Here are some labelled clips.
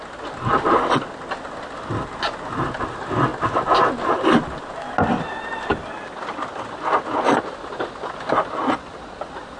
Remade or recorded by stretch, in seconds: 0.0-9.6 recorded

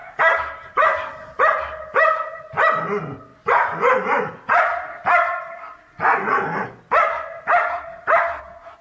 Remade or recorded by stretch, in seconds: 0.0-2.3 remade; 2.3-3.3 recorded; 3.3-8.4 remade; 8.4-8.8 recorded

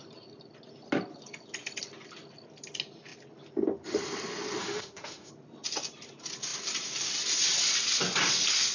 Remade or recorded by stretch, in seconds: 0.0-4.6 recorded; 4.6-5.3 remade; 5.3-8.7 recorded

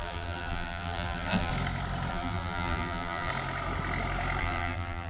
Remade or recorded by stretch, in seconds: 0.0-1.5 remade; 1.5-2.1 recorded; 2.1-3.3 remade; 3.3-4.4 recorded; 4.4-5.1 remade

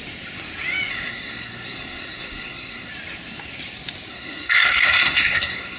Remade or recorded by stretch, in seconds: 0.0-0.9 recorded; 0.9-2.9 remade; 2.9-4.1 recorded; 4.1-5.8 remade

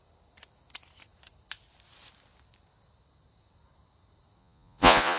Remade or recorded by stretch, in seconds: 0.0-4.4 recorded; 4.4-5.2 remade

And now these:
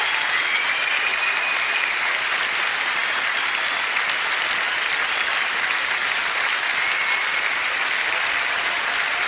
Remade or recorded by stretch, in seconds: 0.0-9.3 recorded